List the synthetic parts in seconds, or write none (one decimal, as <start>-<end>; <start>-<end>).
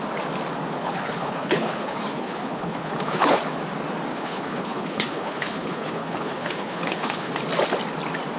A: 0.8-3.4; 4.1-7.3